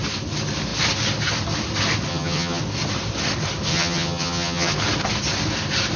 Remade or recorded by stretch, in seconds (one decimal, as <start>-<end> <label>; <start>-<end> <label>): 0.0-2.1 recorded; 2.1-2.6 remade; 2.6-3.7 recorded; 3.7-4.7 remade; 4.7-6.0 recorded